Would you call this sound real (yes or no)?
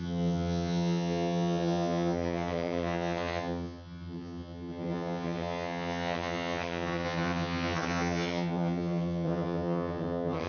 no